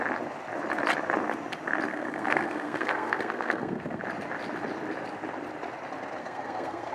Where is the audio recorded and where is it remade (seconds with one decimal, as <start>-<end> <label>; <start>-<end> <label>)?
0.0-1.9 recorded; 1.9-4.0 remade; 4.0-6.2 recorded; 6.2-6.9 remade